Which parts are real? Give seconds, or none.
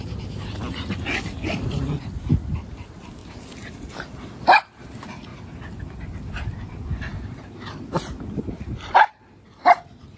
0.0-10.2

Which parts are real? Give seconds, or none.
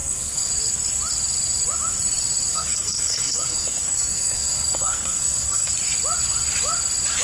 0.5-2.5; 5.7-7.2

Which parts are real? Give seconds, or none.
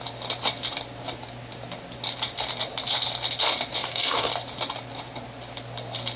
0.0-3.8; 4.3-6.2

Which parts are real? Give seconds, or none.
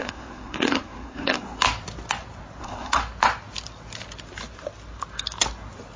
1.6-2.6; 3.0-6.0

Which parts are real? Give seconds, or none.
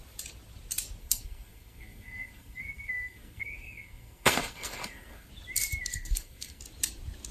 0.0-1.0; 5.3-5.9; 6.6-7.3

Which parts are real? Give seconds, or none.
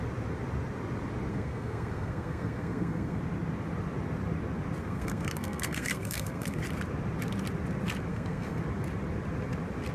0.0-1.3; 3.2-4.8; 6.6-8.1; 8.6-9.9